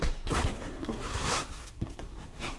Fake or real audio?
fake